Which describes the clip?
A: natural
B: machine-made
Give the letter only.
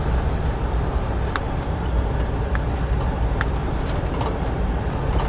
A